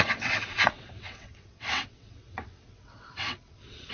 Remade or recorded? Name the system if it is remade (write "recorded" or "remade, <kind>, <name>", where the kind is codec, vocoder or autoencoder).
remade, vocoder, WaveNeXt